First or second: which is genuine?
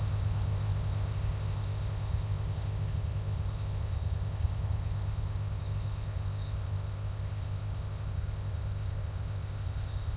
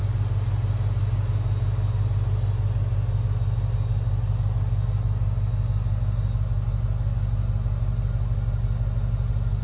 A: second